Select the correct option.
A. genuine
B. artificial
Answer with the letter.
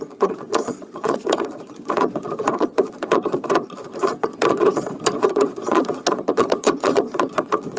B